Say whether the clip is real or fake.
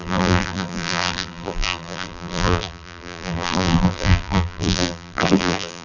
fake